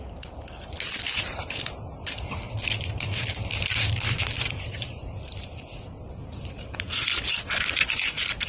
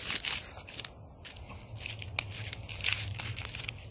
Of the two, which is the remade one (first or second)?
first